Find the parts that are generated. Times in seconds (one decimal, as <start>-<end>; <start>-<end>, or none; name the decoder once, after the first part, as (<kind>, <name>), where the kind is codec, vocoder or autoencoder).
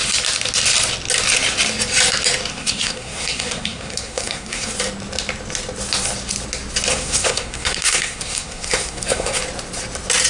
2.5-4.7 (codec, SNAC); 6.9-9.4